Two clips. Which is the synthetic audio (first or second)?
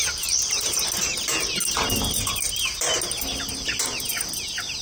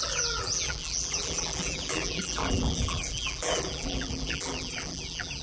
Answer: second